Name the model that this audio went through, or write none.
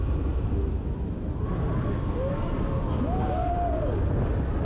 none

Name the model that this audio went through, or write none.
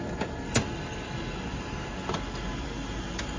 none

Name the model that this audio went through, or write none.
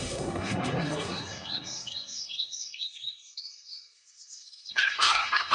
codec, SNAC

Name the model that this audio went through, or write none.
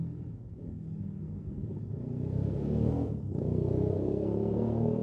codec, SNAC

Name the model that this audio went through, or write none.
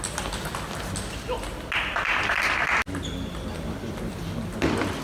none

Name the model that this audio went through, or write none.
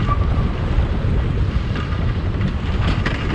none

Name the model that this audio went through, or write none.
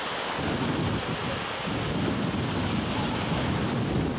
none